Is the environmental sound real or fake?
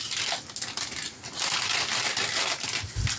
real